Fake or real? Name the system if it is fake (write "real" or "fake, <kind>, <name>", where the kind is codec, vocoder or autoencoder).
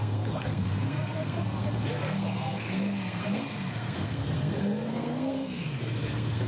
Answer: fake, codec, SNAC